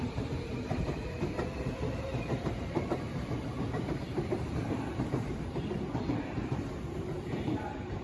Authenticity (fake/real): fake